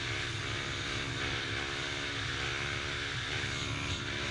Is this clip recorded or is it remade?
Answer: recorded